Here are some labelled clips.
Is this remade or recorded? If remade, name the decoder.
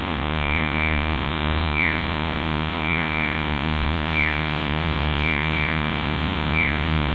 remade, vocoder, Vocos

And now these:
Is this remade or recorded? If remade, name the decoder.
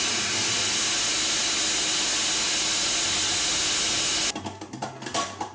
recorded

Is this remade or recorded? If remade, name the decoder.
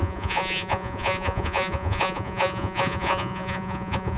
remade, vocoder, Vocos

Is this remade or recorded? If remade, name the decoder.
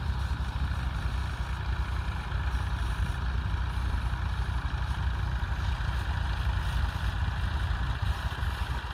recorded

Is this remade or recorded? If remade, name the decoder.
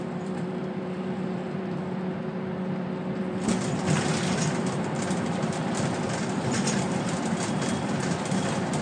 remade, vocoder, BigVGAN v2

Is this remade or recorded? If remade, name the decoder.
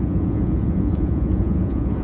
remade, vocoder, Vocos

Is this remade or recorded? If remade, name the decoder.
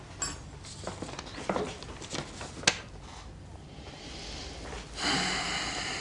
recorded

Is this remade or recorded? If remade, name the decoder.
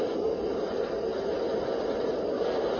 recorded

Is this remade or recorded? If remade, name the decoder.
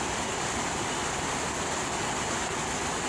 recorded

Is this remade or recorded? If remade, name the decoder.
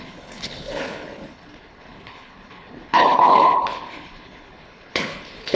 remade, codec, HILCodec